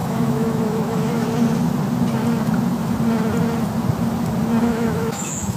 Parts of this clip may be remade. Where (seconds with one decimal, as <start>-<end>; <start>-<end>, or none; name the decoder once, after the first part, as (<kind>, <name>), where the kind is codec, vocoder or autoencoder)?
0.0-1.2 (autoencoder, DAC-VAE); 4.6-5.6